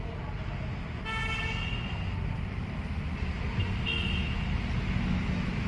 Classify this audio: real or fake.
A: real